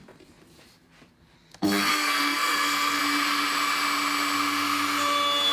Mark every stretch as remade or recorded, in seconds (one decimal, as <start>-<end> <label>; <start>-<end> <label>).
0.0-1.6 recorded; 1.6-3.0 remade; 3.0-5.5 recorded